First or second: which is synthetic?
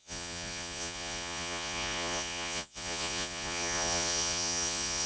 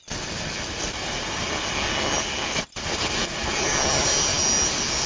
first